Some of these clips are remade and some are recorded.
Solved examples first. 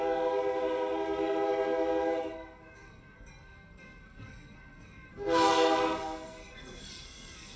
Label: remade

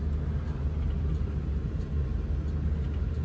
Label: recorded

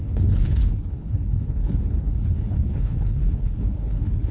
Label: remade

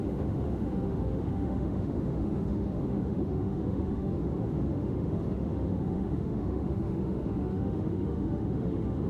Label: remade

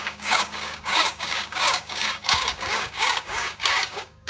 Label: remade